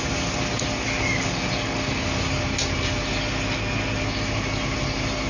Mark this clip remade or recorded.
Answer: recorded